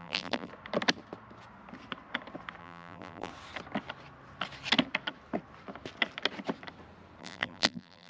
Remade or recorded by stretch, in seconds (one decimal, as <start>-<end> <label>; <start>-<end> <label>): 0.0-0.5 remade; 0.5-2.6 recorded; 2.6-3.3 remade; 3.3-7.2 recorded; 7.2-8.1 remade